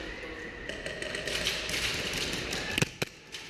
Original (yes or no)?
yes